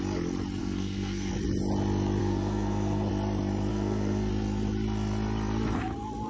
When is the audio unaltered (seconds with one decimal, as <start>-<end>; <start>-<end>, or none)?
0.0-0.6; 1.3-2.2; 3.1-3.7; 4.3-6.3